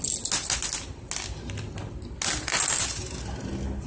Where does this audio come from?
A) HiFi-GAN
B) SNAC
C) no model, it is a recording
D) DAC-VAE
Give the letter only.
C